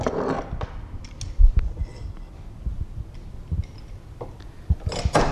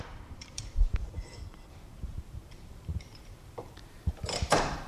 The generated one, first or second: second